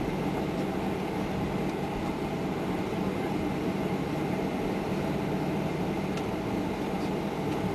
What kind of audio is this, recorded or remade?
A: recorded